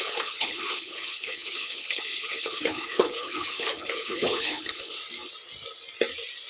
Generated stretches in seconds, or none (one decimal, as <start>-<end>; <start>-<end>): 0.0-5.0